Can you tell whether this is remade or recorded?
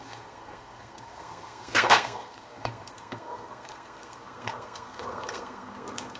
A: remade